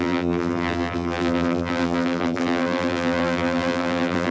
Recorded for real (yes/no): no